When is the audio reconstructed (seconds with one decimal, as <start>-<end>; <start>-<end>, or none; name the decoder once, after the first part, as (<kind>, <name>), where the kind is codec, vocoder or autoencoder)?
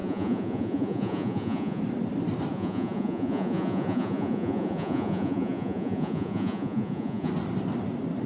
0.0-1.8 (vocoder, Vocos); 2.5-7.3